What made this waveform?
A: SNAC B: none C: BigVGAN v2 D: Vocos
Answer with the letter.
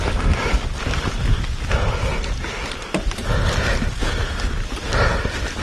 B